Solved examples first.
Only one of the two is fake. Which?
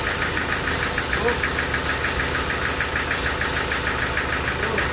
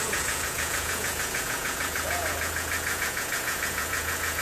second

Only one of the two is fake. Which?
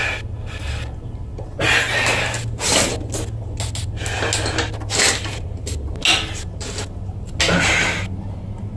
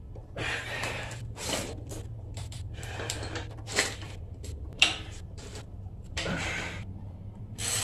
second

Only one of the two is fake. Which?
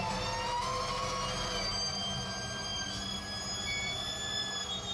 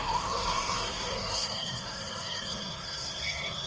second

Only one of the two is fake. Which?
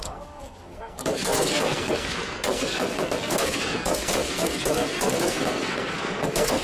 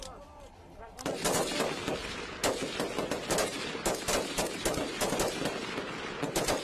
first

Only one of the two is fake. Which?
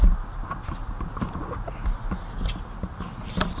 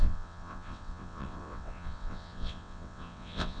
second